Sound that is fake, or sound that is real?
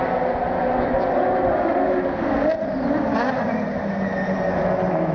real